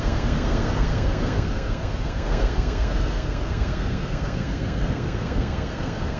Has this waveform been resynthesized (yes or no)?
yes